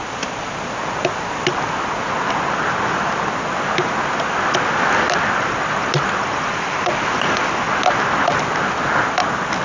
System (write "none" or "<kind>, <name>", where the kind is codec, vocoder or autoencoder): none